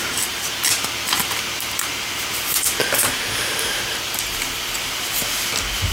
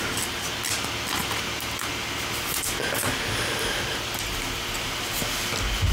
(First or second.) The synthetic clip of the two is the first